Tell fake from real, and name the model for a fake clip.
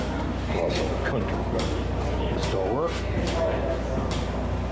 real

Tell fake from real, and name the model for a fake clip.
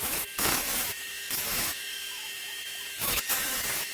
fake, autoencoder, DAC-VAE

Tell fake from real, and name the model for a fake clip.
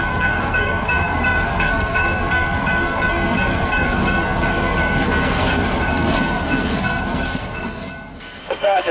fake, codec, SNAC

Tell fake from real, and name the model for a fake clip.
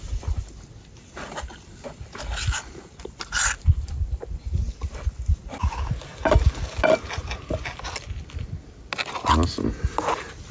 real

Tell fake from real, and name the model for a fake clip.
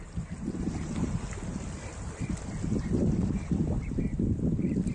real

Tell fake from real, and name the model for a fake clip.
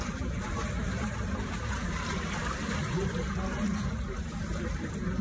fake, vocoder, BigVGAN v2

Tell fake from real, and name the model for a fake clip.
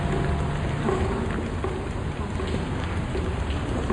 real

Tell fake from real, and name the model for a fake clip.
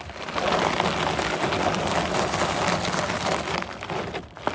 real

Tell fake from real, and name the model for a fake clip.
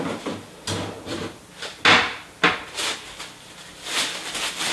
real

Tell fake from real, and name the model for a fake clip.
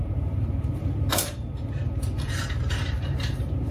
fake, vocoder, BigVGAN v2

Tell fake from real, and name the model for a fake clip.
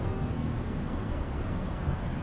fake, codec, SNAC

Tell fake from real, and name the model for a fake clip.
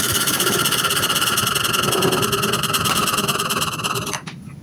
real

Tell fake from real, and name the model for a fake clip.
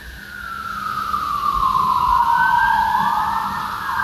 real